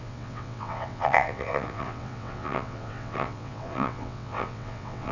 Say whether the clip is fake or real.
fake